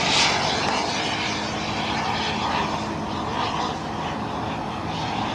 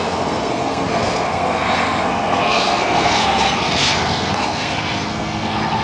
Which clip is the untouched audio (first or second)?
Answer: first